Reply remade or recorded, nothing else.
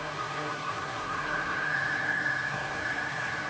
remade